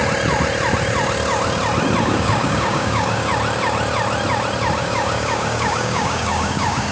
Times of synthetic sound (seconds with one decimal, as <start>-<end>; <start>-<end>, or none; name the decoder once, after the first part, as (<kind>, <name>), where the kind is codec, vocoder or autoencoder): 2.0-3.3 (codec, DAC); 4.8-6.9